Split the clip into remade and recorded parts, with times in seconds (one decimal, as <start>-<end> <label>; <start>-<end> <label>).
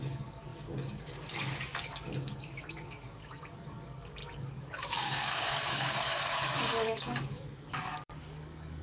0.0-8.8 remade